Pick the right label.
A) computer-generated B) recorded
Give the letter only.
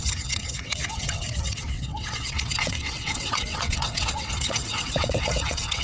A